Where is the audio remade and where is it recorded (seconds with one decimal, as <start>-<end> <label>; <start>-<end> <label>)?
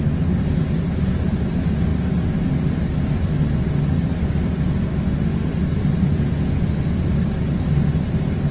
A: 0.0-4.9 recorded; 4.9-5.5 remade; 5.5-8.5 recorded